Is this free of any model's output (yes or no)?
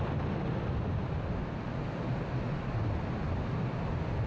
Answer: yes